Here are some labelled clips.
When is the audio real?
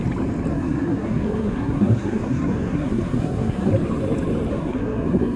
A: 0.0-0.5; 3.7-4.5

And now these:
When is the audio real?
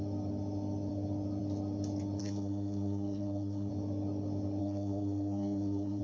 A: 0.0-2.2; 3.7-4.6